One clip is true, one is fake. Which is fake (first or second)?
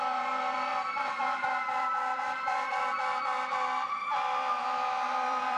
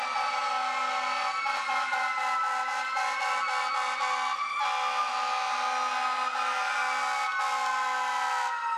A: first